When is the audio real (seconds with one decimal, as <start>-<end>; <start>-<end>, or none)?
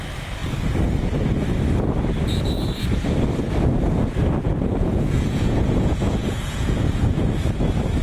0.0-4.4; 7.2-8.0